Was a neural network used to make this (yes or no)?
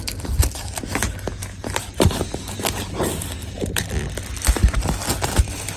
no